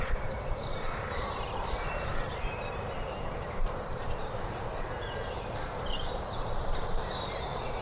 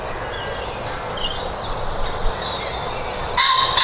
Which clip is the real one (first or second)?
second